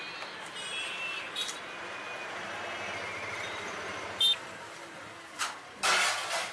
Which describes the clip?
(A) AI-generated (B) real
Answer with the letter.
B